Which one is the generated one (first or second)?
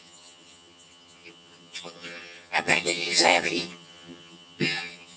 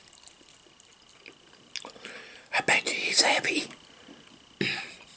first